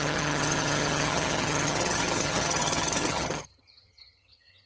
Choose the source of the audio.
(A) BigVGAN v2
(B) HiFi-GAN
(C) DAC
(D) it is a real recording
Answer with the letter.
B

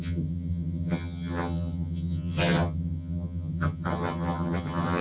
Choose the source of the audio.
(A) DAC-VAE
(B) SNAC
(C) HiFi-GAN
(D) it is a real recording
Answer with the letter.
C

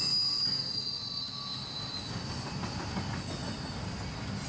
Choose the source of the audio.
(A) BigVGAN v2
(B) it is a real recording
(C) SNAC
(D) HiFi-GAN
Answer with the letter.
B